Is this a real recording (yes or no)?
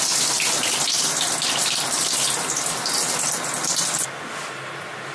yes